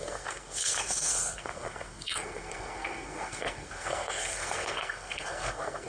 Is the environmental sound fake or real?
fake